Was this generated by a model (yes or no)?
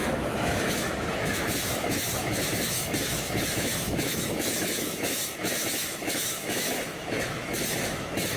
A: yes